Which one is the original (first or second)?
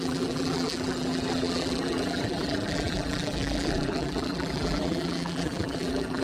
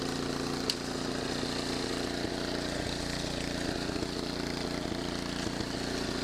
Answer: second